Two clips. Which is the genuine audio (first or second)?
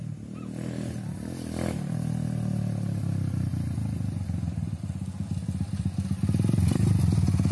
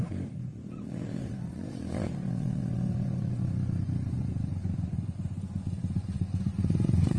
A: first